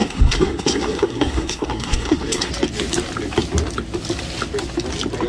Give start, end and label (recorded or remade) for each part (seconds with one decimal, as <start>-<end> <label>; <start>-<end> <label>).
0.0-2.5 remade; 2.5-5.3 recorded